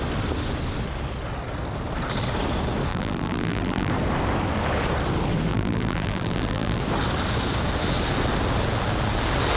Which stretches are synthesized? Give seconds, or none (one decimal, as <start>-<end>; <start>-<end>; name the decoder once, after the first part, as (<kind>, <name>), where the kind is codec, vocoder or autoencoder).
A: 2.9-3.9 (vocoder, BigVGAN v2); 5.5-6.8